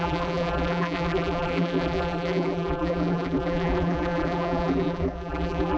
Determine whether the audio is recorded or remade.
remade